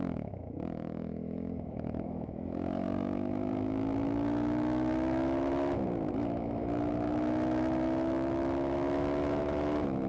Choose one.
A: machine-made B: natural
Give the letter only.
A